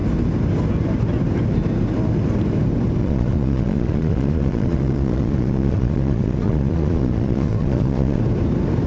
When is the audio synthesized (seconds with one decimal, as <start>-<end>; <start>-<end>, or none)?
3.0-8.2